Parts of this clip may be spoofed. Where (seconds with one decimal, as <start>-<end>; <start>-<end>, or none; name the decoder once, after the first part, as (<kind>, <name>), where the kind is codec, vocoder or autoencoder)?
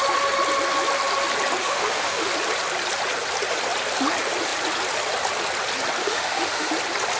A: 1.6-2.3 (autoencoder, DAC-VAE); 6.0-6.7